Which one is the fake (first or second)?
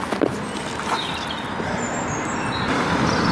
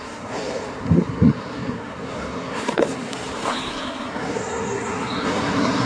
second